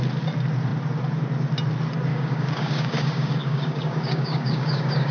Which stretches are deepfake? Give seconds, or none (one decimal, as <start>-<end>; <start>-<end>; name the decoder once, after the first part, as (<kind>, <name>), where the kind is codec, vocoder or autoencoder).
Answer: 2.1-5.1 (codec, DAC)

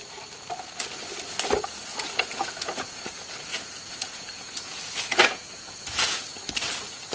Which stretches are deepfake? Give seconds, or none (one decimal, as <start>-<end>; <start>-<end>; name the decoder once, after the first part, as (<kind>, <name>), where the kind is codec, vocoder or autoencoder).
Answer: 1.9-6.2 (vocoder, Vocos)

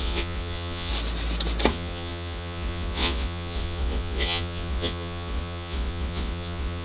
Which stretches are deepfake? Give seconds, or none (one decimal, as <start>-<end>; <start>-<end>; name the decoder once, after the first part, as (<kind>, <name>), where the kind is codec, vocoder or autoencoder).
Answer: 0.0-0.9 (vocoder, Vocos); 1.7-6.8

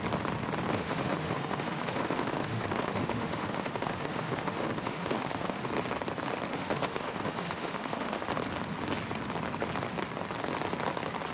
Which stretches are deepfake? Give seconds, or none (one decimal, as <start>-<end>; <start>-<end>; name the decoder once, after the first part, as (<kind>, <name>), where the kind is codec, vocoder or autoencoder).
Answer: 0.7-5.7 (autoencoder, DAC-VAE); 6.5-8.3

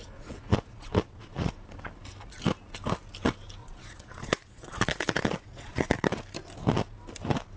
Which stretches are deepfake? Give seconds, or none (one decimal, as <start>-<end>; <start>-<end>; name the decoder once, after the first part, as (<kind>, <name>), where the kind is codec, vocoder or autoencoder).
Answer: 0.0-1.5 (vocoder, Vocos); 3.6-6.2

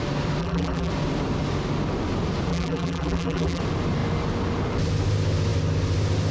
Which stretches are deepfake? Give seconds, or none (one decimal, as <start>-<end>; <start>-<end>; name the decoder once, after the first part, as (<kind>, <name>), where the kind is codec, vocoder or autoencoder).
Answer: 0.4-0.9 (vocoder, BigVGAN v2); 2.5-3.6

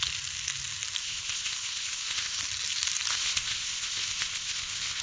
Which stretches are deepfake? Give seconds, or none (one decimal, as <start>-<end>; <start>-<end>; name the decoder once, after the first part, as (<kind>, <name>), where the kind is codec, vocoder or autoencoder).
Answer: 1.0-2.4 (codec, ZipCodec); 3.1-5.0

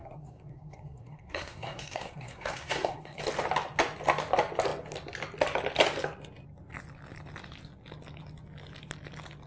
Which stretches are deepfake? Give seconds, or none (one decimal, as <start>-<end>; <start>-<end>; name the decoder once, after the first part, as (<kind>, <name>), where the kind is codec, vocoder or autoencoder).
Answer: 0.0-3.2 (codec, SNAC)